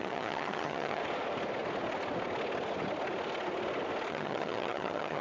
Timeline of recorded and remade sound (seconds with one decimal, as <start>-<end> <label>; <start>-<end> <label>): 0.0-1.0 remade; 1.0-4.1 recorded; 4.1-5.2 remade